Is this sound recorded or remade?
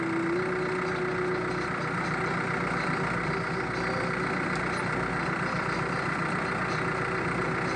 recorded